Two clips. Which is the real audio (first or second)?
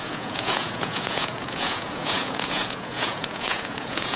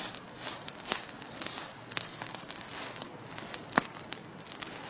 second